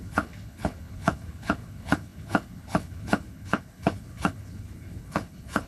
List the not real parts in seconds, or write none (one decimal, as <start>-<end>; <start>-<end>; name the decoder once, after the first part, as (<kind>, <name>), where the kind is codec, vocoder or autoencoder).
0.0-5.7 (codec, HILCodec)